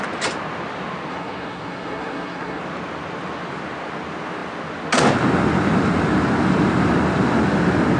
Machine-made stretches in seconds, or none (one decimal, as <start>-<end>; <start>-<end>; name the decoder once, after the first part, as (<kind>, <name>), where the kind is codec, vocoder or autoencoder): 1.1-2.6 (codec, SNAC)